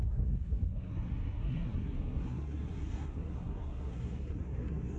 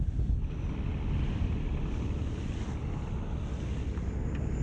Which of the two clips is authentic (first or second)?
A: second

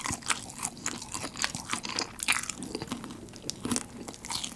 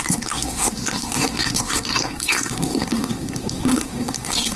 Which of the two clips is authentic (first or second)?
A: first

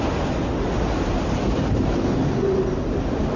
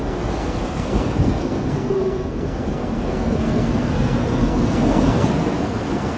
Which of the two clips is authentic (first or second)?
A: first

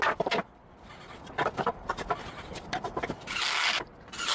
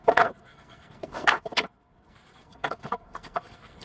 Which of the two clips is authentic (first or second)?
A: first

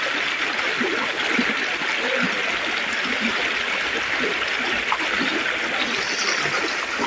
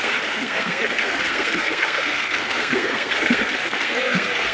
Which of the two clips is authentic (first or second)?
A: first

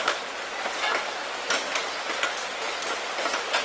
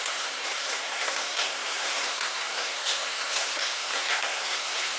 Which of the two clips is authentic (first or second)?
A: first